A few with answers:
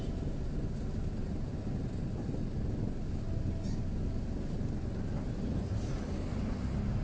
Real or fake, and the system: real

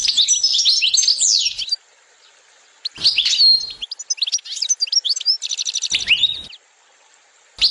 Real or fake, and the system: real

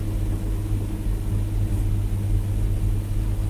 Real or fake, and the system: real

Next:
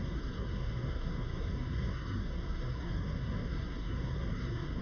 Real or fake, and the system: fake, codec, SNAC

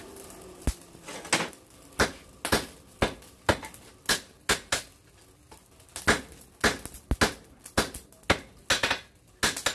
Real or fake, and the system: real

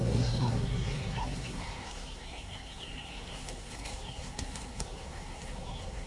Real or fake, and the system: fake, codec, SNAC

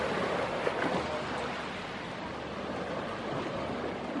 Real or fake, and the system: real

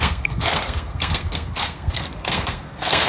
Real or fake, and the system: fake, codec, SNAC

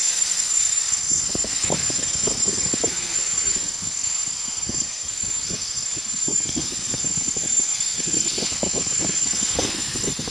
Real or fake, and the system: fake, codec, SNAC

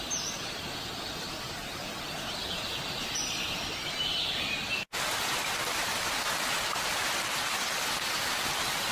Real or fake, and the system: real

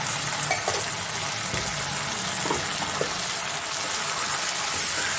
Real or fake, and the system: real